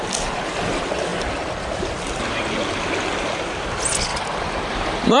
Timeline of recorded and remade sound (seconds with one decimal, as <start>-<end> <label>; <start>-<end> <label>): 0.0-4.1 recorded; 4.1-5.2 remade